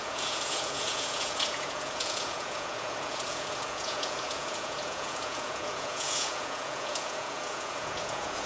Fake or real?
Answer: fake